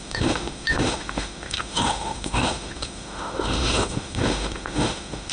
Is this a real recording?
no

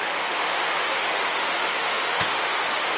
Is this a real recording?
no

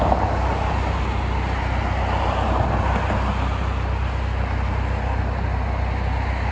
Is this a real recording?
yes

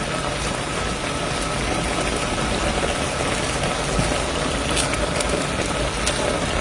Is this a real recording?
yes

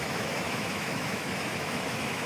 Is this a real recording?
no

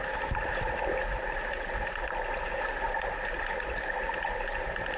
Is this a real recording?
yes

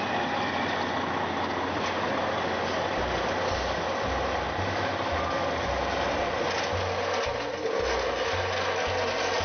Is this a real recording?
yes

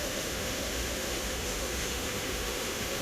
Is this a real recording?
no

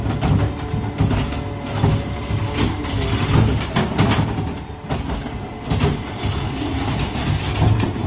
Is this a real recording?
yes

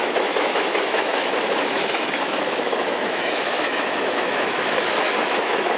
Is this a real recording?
no